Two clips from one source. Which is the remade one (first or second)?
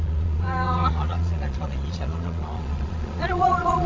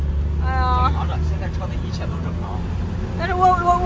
first